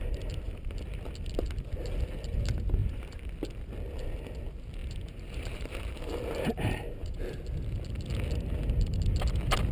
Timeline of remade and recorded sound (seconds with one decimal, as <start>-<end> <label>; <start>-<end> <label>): 0.0-2.8 recorded; 2.8-3.3 remade; 3.3-4.8 recorded; 4.8-7.3 remade; 7.3-9.7 recorded